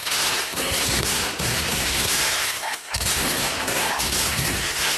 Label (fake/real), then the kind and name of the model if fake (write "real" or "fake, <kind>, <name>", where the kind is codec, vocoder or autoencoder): fake, codec, SNAC